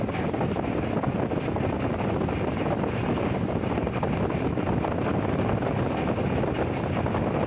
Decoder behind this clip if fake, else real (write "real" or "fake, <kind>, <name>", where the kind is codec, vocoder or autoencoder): real